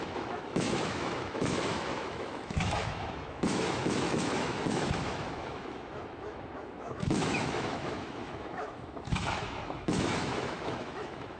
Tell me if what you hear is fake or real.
fake